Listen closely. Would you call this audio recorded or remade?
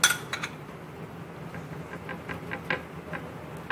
recorded